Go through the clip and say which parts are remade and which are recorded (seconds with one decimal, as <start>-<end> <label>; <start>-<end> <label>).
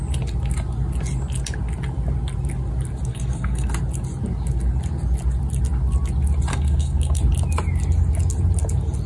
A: 0.0-3.1 recorded; 3.1-3.7 remade; 3.7-6.5 recorded; 6.5-7.2 remade; 7.2-9.1 recorded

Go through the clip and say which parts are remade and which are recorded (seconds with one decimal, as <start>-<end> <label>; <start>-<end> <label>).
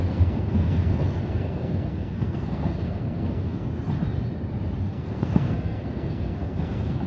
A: 0.0-3.7 remade; 3.7-4.8 recorded; 4.8-7.1 remade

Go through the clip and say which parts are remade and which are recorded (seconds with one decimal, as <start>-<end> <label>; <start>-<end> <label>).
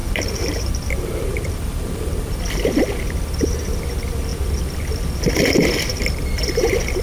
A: 0.0-2.4 remade; 2.4-7.0 recorded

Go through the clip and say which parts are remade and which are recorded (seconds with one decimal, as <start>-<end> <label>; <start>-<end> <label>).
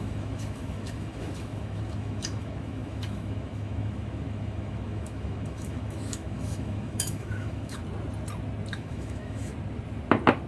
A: 0.0-7.8 remade; 7.8-8.7 recorded; 8.7-9.5 remade; 9.5-10.5 recorded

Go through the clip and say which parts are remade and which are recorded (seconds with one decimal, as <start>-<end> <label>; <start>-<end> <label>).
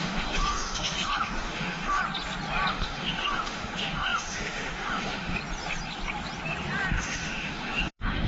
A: 0.0-2.0 remade; 2.0-2.7 recorded; 2.7-5.4 remade; 5.4-6.9 recorded; 6.9-8.3 remade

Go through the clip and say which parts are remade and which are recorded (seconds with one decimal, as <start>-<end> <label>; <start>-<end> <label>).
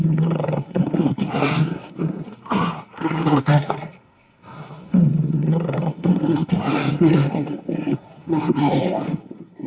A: 0.0-9.7 remade